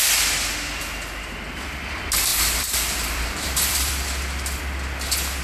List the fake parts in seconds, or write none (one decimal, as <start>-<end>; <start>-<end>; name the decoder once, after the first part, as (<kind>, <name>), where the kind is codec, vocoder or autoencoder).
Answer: 2.3-4.6 (vocoder, BigVGAN v2)